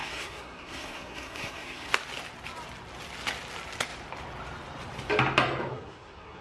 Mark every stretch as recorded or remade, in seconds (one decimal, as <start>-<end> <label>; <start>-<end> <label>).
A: 0.0-1.9 remade; 1.9-5.7 recorded; 5.7-6.4 remade